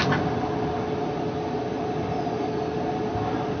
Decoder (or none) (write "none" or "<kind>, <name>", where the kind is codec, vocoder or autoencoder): none